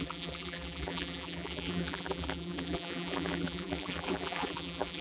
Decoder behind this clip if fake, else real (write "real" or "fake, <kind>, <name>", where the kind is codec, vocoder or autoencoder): fake, vocoder, BigVGAN v2